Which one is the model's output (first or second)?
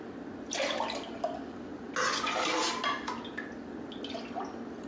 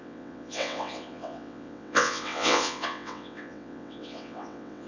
second